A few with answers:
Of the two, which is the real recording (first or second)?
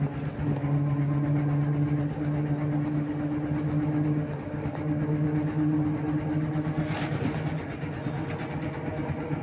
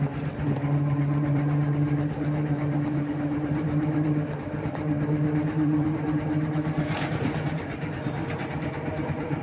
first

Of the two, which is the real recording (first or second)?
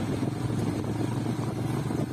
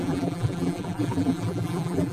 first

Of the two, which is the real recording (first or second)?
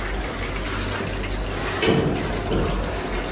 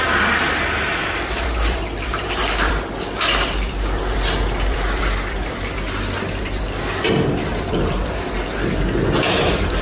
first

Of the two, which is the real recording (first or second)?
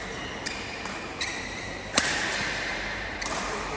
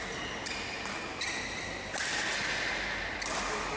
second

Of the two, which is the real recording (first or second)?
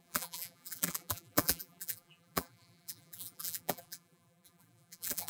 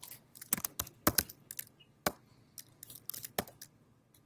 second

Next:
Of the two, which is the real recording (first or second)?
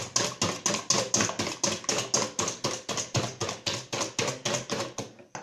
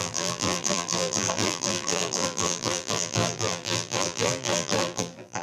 first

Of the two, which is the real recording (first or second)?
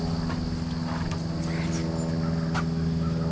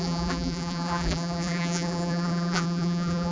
first